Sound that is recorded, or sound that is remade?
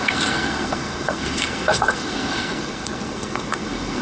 remade